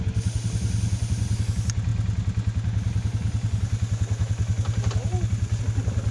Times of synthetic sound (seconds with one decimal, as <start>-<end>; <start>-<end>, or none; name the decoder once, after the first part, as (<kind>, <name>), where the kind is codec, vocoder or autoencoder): none